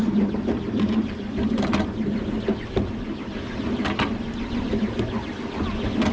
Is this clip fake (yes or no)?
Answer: no